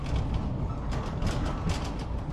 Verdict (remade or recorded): recorded